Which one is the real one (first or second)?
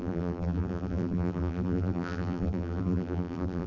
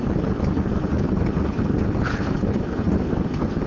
second